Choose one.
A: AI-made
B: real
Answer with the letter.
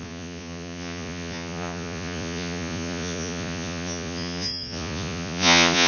A